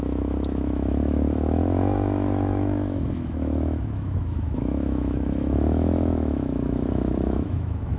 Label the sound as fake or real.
fake